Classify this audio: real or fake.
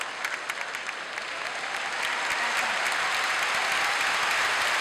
real